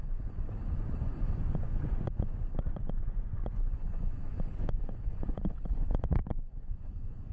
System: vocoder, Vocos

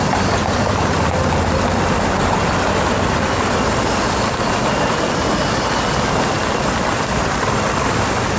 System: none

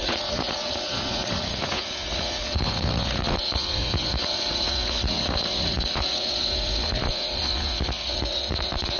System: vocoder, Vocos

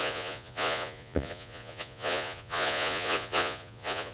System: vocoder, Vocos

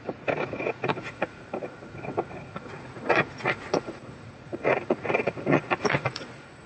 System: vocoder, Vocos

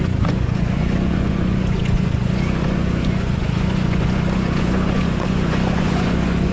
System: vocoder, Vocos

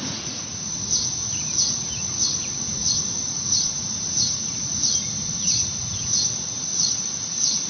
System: vocoder, Vocos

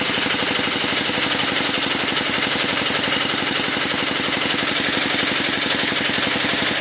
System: none